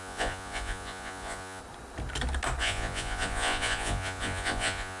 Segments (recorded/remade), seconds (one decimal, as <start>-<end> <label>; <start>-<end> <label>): 0.0-1.6 remade; 1.6-2.6 recorded; 2.6-5.0 remade